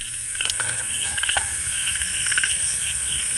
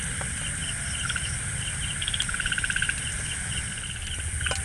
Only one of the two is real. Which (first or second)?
second